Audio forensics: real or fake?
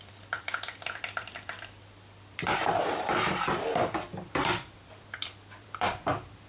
fake